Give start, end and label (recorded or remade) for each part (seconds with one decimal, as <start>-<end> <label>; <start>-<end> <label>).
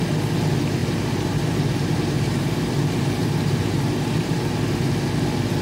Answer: 0.0-0.8 recorded; 0.8-2.7 remade; 2.7-3.2 recorded; 3.2-4.5 remade; 4.5-5.6 recorded